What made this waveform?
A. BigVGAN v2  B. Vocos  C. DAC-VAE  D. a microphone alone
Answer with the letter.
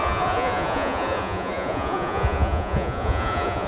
B